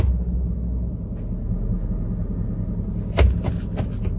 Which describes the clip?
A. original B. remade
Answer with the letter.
A